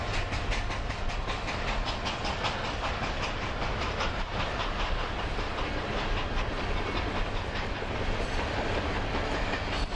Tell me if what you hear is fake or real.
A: real